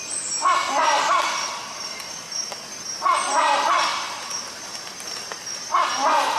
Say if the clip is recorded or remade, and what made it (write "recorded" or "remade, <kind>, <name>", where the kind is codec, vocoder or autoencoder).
recorded